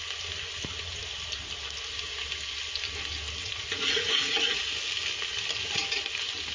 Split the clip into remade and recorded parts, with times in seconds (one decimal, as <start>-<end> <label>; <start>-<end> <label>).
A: 0.0-3.4 recorded; 3.4-4.7 remade; 4.7-6.5 recorded